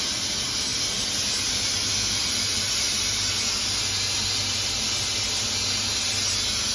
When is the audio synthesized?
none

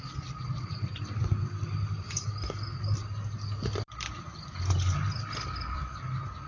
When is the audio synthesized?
0.0-3.0; 3.6-6.5

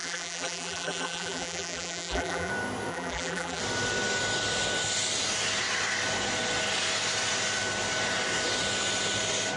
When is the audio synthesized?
0.0-2.5; 2.9-3.6

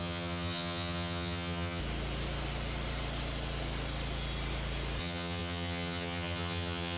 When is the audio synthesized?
0.0-1.8; 5.0-7.0

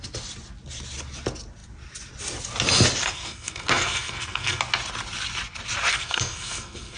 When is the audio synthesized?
3.0-4.6; 5.9-7.0

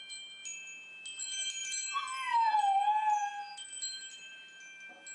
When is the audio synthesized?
1.6-2.6; 3.5-4.4